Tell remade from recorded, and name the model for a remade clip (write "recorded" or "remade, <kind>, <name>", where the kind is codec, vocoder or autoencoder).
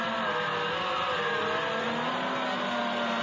recorded